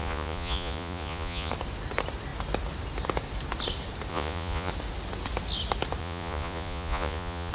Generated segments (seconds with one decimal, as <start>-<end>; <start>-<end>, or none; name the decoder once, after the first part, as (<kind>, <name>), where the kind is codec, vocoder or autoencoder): 0.0-1.5 (vocoder, Vocos); 4.1-4.7; 6.0-7.5